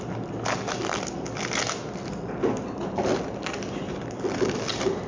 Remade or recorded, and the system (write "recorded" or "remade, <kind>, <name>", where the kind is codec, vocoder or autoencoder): recorded